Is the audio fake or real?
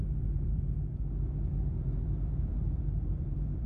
fake